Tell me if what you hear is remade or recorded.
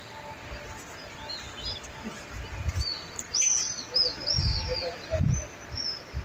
recorded